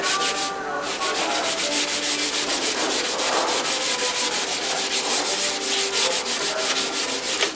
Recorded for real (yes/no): yes